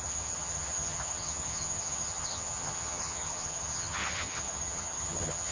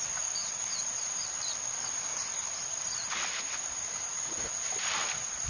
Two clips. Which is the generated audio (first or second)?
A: first